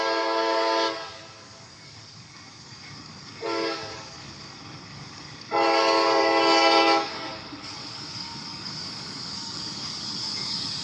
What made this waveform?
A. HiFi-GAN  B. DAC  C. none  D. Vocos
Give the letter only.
B